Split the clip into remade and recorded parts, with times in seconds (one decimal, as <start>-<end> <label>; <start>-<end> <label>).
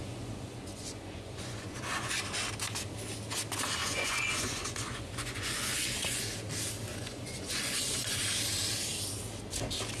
0.0-2.2 remade; 2.2-3.8 recorded; 3.8-6.2 remade; 6.2-6.9 recorded; 6.9-8.2 remade; 8.2-10.0 recorded